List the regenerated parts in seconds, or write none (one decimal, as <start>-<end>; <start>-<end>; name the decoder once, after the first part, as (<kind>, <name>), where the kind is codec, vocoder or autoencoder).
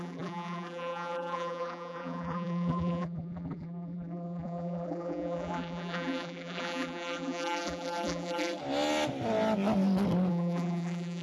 0.0-8.6 (vocoder, BigVGAN v2); 10.3-11.2